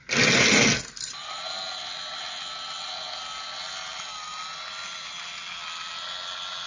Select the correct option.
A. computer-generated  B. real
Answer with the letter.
B